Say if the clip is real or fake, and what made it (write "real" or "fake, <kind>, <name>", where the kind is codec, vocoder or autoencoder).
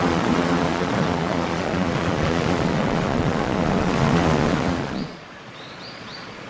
fake, vocoder, Vocos